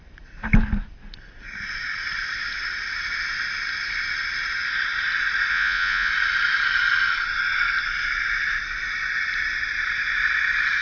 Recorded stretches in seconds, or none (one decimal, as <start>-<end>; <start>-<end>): 0.0-5.5; 6.1-10.8